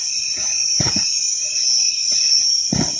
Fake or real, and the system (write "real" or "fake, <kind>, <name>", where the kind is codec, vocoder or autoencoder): real